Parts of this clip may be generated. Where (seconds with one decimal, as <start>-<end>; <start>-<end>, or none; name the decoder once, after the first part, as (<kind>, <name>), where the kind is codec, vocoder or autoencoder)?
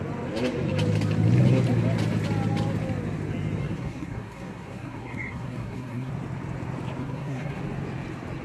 3.6-6.1 (codec, SNAC); 7.0-7.6